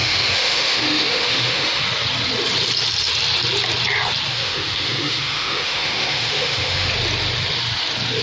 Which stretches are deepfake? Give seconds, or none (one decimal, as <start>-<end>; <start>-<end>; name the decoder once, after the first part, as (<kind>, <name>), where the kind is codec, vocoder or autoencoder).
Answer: 0.0-1.8 (autoencoder, DAC-VAE); 4.3-6.9